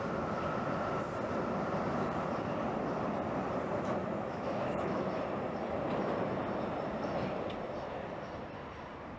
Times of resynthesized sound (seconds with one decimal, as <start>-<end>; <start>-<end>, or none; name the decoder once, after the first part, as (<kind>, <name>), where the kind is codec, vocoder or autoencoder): 4.0-5.0 (autoencoder, DAC-VAE)

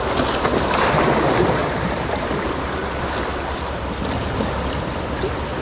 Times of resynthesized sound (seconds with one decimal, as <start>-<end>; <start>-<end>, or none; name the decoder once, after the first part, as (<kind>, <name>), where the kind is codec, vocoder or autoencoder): 1.6-4.0 (vocoder, BigVGAN v2)

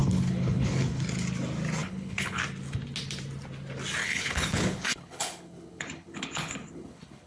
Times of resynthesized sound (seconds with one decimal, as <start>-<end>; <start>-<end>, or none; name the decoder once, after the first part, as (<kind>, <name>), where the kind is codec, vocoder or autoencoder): 0.0-1.0 (codec, HILCodec); 1.8-2.4; 4.0-7.3

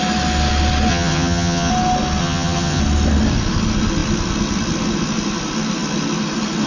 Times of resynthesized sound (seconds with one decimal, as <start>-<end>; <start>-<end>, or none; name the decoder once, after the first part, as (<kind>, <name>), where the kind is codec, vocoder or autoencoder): 0.9-1.7 (vocoder, HiFi-GAN); 2.2-2.8

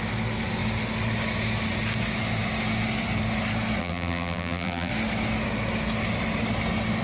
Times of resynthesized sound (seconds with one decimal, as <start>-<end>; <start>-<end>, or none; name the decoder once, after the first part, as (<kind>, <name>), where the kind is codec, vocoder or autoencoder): 3.8-4.9 (vocoder, BigVGAN v2)